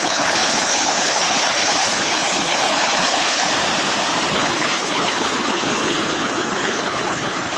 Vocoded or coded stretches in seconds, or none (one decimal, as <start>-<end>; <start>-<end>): 0.0-3.5; 4.3-7.6